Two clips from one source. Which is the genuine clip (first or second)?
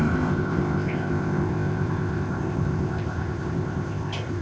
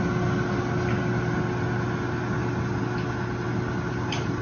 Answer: second